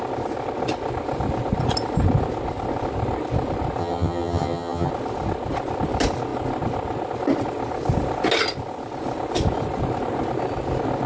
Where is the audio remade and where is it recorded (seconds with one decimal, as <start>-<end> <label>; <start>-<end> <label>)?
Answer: 0.0-3.8 recorded; 3.8-4.9 remade; 4.9-11.1 recorded